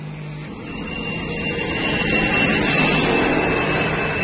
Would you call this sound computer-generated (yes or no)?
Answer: no